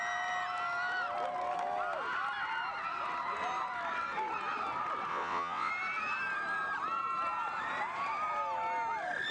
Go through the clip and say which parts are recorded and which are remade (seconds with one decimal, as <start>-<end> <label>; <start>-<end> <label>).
0.0-5.1 recorded; 5.1-5.7 remade; 5.7-9.3 recorded